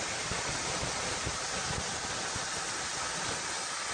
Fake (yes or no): no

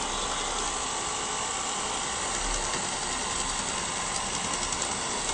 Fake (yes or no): no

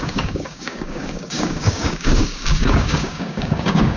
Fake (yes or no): yes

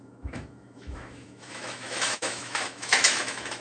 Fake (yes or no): yes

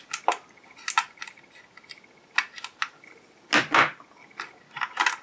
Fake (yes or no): no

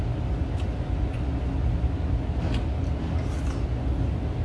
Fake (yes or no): no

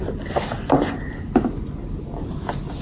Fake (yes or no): no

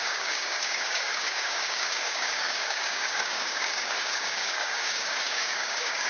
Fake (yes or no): yes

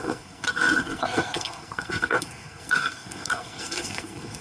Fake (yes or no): yes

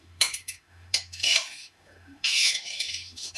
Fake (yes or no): yes